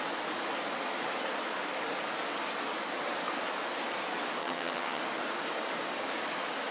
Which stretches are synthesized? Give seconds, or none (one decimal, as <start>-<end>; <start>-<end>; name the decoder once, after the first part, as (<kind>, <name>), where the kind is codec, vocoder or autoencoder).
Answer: 4.4-5.0 (vocoder, HiFi-GAN)